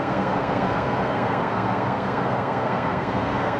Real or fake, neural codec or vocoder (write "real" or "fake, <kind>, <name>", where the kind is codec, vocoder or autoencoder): fake, codec, SNAC